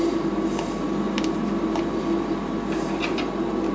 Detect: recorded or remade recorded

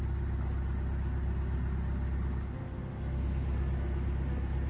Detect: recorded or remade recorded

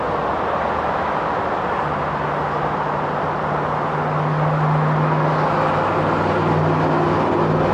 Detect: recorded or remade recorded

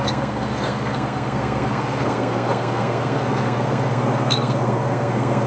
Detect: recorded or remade remade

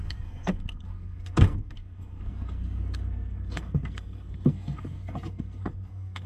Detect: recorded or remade remade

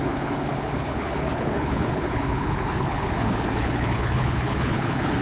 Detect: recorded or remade remade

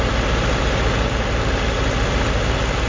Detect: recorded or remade recorded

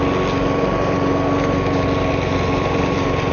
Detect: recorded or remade recorded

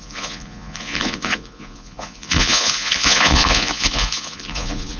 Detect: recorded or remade remade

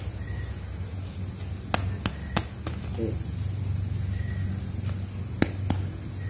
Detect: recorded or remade recorded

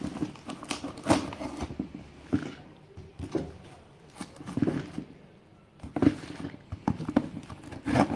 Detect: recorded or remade recorded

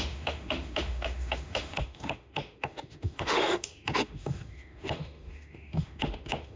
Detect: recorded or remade remade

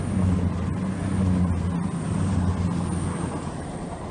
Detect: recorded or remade recorded